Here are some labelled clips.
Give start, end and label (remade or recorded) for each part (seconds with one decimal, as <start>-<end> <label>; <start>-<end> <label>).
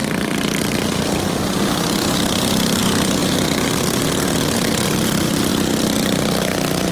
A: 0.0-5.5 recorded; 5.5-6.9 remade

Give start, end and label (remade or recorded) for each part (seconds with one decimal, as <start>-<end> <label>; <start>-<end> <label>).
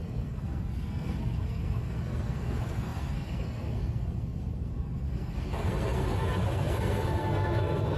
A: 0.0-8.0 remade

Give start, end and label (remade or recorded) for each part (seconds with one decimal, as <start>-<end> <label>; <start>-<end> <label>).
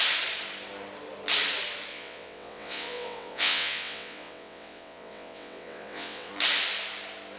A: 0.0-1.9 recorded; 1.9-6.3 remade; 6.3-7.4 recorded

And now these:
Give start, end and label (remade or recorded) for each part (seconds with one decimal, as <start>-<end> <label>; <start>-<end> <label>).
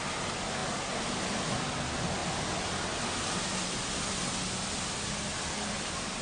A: 0.0-6.2 recorded